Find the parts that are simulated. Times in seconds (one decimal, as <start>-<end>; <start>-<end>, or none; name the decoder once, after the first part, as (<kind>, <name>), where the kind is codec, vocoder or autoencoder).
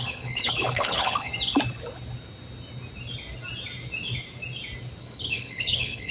0.0-1.3 (codec, HILCodec); 5.0-6.1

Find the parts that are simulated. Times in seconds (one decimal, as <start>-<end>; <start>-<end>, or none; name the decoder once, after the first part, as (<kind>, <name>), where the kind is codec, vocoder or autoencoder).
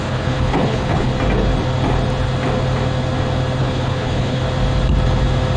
0.0-1.1 (codec, HILCodec); 3.6-4.4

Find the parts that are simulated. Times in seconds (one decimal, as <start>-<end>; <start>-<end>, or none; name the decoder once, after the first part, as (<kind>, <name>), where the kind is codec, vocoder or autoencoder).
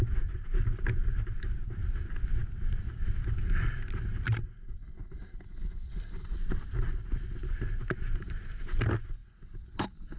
none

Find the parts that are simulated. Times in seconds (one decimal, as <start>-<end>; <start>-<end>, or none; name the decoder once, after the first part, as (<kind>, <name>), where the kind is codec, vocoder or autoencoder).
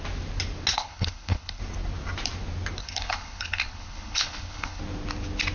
0.7-1.6 (codec, HILCodec); 2.8-4.8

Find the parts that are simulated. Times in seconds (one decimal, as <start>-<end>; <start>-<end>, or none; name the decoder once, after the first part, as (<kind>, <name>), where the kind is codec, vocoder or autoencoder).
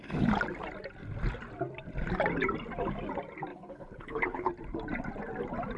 3.5-4.5 (codec, HILCodec)